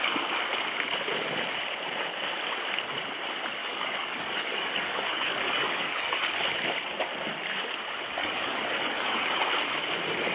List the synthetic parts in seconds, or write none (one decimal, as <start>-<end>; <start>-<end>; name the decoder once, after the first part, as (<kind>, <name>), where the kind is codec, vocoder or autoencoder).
3.6-6.2 (codec, DAC); 8.2-9.4